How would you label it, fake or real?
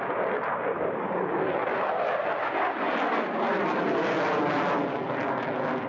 real